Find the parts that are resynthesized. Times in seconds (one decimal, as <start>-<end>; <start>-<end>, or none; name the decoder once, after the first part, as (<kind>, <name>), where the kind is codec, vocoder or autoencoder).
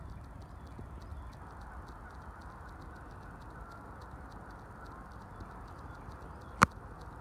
none